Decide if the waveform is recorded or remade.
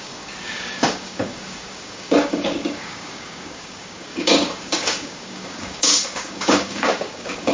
remade